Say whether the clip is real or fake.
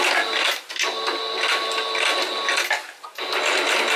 real